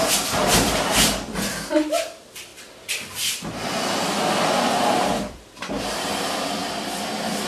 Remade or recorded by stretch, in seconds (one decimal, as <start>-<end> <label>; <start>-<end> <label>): 0.0-2.5 remade; 2.5-5.0 recorded; 5.0-7.5 remade